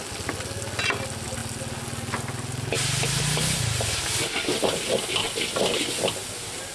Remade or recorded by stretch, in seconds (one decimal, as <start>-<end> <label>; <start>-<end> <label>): 0.0-6.7 recorded